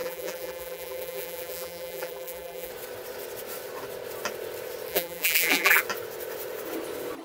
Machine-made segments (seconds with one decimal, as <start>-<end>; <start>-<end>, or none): 0.0-2.7; 4.9-5.8